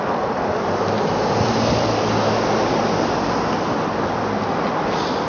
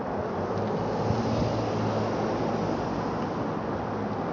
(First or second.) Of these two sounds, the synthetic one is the first